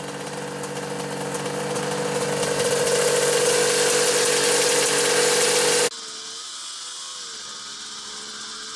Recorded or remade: recorded